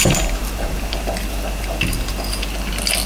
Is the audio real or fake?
real